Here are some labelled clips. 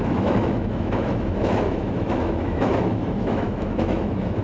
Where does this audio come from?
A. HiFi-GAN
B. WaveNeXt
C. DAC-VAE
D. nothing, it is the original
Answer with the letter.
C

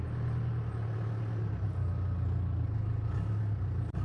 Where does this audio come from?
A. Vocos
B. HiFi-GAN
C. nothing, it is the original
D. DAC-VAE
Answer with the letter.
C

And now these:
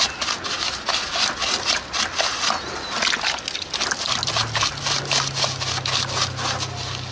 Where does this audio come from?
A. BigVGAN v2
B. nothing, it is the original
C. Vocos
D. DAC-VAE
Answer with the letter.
B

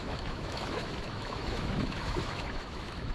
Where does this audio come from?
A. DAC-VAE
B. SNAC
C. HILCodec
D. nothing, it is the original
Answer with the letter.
A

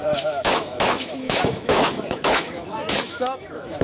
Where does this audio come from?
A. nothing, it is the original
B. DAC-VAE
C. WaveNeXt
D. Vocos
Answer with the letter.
B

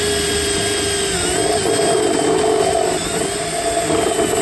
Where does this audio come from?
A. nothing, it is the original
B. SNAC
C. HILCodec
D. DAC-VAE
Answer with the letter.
A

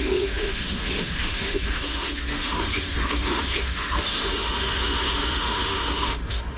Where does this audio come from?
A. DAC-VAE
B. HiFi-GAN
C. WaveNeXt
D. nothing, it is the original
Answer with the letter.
A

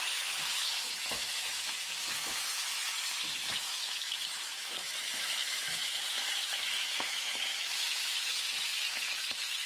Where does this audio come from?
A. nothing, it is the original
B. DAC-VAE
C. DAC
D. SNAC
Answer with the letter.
B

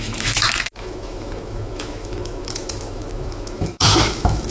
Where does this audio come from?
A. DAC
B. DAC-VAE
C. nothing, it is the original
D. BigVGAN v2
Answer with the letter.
B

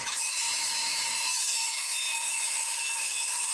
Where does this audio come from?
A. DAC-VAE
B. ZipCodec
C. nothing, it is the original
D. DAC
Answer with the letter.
A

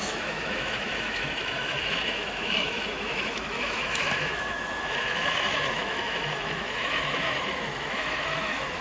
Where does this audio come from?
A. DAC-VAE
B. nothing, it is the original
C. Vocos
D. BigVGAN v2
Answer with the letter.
A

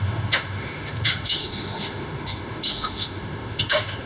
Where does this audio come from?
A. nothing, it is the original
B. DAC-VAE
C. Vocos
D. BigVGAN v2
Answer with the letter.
B